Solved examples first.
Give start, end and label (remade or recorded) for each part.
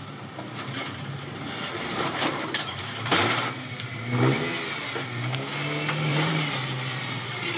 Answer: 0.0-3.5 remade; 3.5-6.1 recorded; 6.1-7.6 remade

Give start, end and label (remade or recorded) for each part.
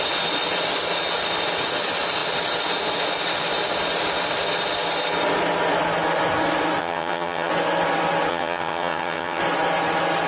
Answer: 0.0-6.8 recorded; 6.8-7.5 remade; 7.5-8.3 recorded; 8.3-9.4 remade; 9.4-10.3 recorded